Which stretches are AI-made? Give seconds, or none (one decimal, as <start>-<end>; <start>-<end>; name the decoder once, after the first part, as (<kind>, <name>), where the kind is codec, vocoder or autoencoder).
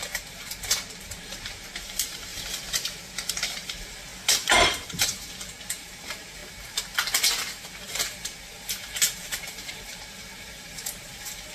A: 0.0-2.3 (vocoder, BigVGAN v2); 3.3-4.1; 4.7-11.5